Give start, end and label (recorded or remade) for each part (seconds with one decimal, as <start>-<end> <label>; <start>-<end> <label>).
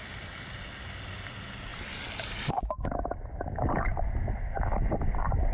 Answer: 0.0-5.5 recorded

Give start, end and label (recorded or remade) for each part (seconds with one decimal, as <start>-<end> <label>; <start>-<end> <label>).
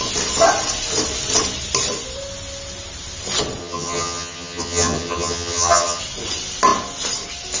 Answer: 0.0-3.6 recorded; 3.6-6.0 remade; 6.0-7.6 recorded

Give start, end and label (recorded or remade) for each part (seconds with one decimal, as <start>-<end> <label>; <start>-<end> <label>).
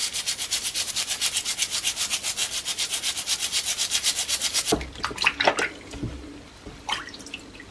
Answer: 0.0-0.9 remade; 0.9-7.7 recorded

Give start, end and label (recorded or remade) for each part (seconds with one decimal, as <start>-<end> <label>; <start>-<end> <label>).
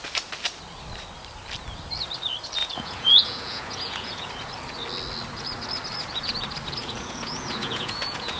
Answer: 0.0-2.6 recorded; 2.6-4.3 remade; 4.3-6.8 recorded; 6.8-8.4 remade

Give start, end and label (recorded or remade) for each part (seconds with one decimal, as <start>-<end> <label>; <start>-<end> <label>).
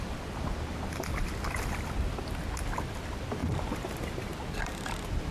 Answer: 0.0-5.3 recorded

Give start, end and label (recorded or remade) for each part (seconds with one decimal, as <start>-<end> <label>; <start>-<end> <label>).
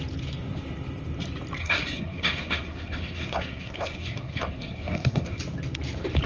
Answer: 0.0-1.6 recorded; 1.6-5.4 remade; 5.4-6.3 recorded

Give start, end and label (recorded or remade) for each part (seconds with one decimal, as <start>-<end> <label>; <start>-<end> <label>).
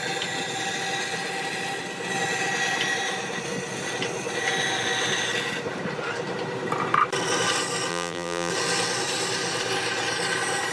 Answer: 0.0-7.9 recorded; 7.9-8.5 remade; 8.5-10.7 recorded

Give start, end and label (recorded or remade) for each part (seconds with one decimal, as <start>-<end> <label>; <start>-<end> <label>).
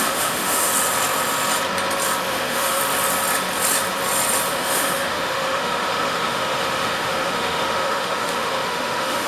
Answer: 0.0-0.7 remade; 0.7-2.3 recorded; 2.3-2.8 remade; 2.8-4.5 recorded; 4.5-9.3 remade